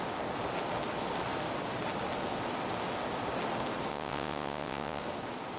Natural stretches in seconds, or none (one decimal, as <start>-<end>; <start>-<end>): 0.0-3.9; 5.0-5.6

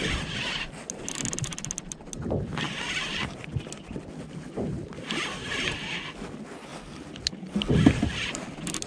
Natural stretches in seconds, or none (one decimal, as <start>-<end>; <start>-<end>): 0.0-8.9